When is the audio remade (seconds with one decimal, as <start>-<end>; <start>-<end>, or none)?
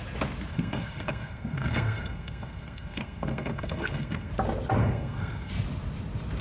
0.5-4.3; 4.8-5.5